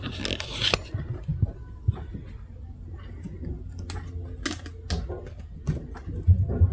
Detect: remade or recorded recorded